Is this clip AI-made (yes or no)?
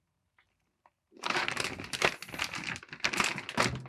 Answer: no